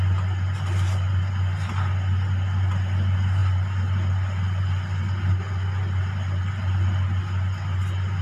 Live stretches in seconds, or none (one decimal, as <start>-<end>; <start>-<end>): 0.0-8.2

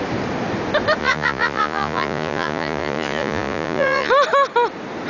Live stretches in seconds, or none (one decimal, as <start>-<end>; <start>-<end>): 0.0-1.0; 4.1-5.1